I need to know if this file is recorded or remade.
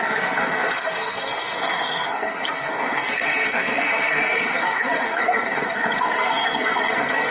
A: remade